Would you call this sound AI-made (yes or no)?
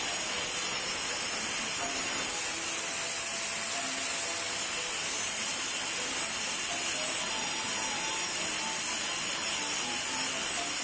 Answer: no